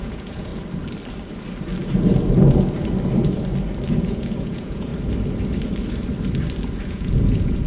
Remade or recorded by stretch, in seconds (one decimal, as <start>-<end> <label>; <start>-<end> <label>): 0.0-0.5 remade; 0.5-3.9 recorded; 3.9-4.9 remade; 4.9-6.7 recorded; 6.7-7.7 remade